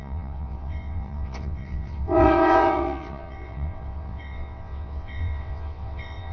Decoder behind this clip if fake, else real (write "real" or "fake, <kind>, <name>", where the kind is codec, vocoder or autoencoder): fake, vocoder, WaveNeXt